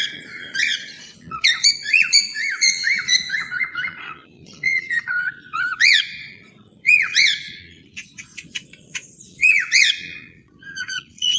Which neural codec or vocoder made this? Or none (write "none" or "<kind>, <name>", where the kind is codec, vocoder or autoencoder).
vocoder, Vocos